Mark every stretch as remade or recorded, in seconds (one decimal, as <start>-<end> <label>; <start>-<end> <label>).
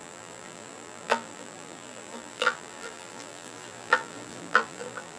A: 0.0-5.2 remade